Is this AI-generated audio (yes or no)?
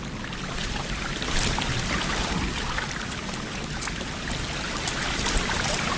no